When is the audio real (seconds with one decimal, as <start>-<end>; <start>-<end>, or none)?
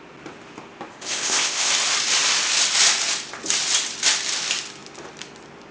0.0-0.9; 1.7-5.7